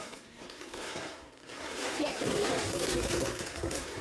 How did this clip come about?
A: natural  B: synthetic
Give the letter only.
B